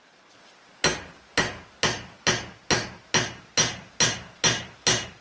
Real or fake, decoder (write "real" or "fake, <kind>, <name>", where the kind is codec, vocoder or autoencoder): real